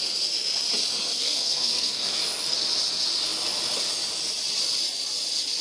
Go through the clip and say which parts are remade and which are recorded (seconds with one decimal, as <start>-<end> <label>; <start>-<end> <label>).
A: 0.0-1.0 recorded; 1.0-2.2 remade; 2.2-5.6 recorded